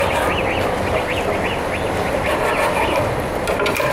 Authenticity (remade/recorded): recorded